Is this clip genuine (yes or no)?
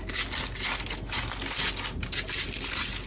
yes